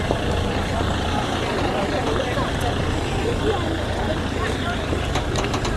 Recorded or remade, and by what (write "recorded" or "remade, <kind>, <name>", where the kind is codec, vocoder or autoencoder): remade, vocoder, BigVGAN v2